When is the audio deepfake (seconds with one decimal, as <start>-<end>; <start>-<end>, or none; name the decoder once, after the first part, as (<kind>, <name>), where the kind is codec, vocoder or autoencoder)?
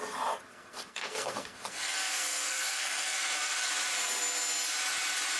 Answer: 0.5-3.7 (codec, SNAC)